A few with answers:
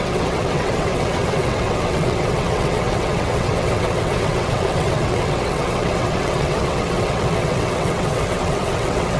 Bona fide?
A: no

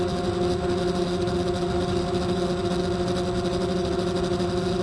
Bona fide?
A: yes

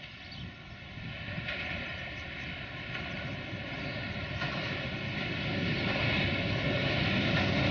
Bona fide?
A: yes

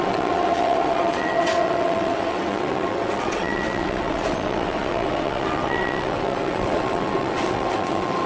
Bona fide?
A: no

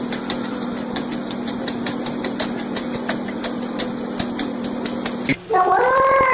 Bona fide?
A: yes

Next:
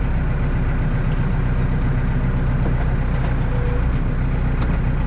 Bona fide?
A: yes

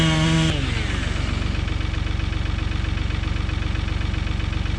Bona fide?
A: yes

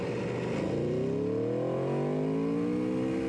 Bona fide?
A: yes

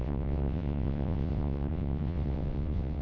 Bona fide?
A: no